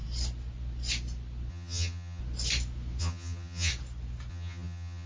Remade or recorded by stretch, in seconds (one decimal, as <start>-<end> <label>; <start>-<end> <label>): 0.0-1.5 recorded; 1.5-2.2 remade; 2.2-3.0 recorded; 3.0-3.7 remade; 3.7-4.3 recorded; 4.3-5.1 remade